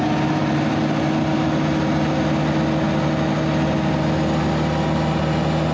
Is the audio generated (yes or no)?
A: no